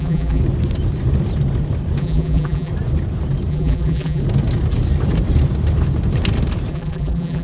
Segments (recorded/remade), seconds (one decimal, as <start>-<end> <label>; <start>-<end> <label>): 0.0-0.4 remade; 0.4-2.0 recorded; 2.0-2.7 remade; 2.7-3.5 recorded; 3.5-4.2 remade; 4.2-6.7 recorded; 6.7-7.4 remade